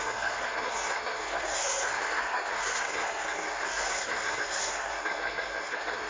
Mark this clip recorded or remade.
remade